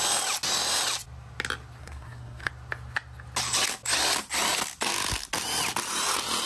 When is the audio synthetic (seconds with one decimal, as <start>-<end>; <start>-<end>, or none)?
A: 1.8-2.5